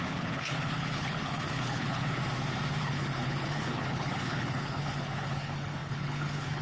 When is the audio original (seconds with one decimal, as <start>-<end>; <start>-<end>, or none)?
2.2-2.8